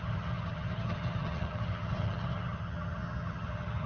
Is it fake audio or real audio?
fake